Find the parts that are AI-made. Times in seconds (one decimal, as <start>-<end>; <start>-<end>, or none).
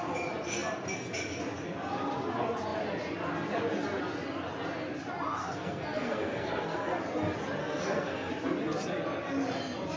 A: 5.4-7.0; 7.6-8.3